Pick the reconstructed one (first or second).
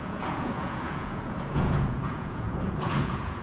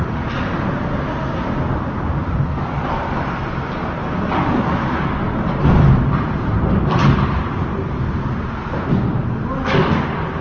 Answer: first